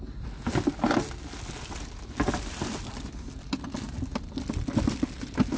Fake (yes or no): no